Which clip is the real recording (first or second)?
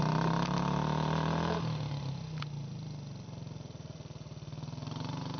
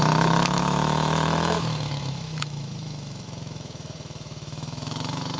first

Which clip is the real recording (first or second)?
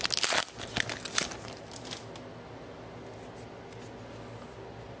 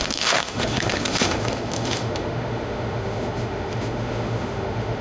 first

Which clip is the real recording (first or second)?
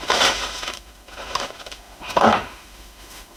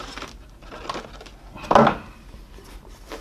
second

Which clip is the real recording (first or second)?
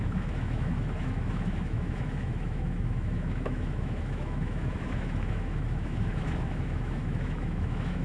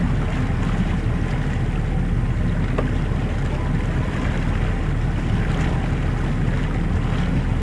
second